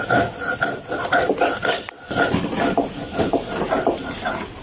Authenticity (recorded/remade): recorded